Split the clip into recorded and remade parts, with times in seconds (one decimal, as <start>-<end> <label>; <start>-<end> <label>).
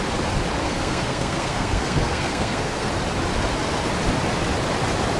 0.0-0.6 recorded; 0.6-2.9 remade; 2.9-5.2 recorded